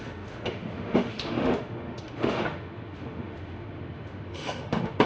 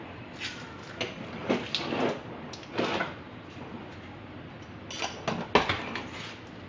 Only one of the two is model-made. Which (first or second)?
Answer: first